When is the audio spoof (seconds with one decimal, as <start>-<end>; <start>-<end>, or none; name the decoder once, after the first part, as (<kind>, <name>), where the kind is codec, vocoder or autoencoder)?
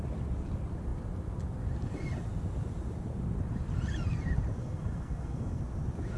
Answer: 4.6-5.6 (codec, SNAC)